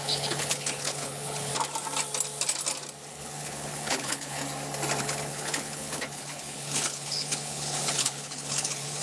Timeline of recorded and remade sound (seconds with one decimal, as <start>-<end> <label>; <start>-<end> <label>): 0.0-1.5 remade; 1.5-3.1 recorded; 3.1-4.4 remade; 4.4-5.0 recorded; 5.0-9.0 remade